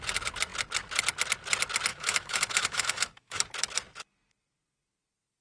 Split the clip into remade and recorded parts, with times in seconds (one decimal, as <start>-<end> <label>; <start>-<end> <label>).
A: 0.0-1.9 recorded; 1.9-3.4 remade; 3.4-5.4 recorded